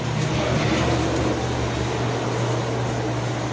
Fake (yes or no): no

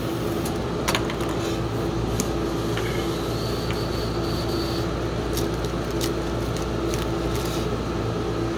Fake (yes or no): no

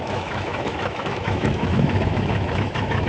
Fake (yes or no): yes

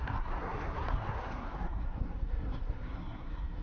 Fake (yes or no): yes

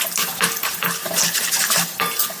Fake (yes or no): no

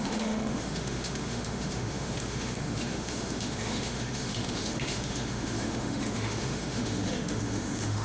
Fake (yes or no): yes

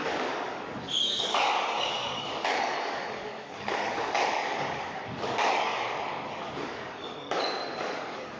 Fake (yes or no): yes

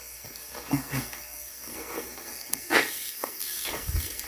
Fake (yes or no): yes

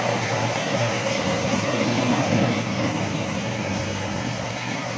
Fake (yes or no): yes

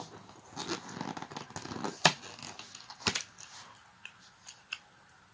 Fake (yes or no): no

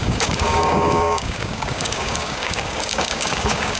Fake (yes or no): yes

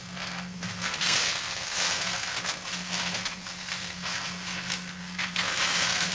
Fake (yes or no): yes